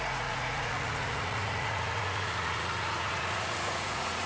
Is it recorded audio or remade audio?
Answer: remade